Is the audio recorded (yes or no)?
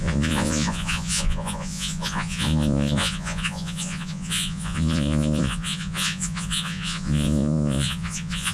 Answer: no